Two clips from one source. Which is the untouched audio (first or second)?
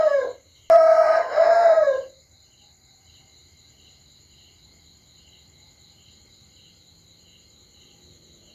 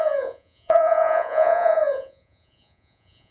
first